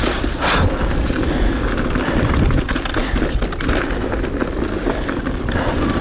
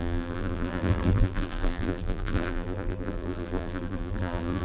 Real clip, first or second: first